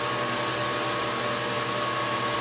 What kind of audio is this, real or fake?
real